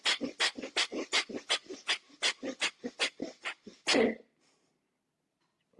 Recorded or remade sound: recorded